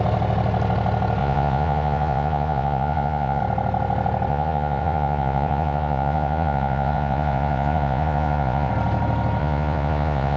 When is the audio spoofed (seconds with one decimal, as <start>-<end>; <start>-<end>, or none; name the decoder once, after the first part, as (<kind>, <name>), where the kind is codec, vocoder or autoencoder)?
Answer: 1.2-3.4 (vocoder, Vocos); 4.3-8.7; 9.4-10.4